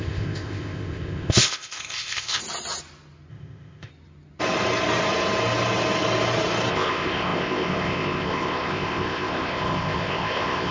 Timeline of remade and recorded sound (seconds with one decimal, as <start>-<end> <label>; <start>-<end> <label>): 0.0-2.4 remade; 2.4-3.3 recorded; 3.3-3.9 remade; 3.9-6.7 recorded; 6.7-10.7 remade